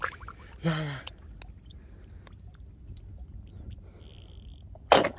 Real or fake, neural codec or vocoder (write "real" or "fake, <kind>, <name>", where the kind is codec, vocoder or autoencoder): real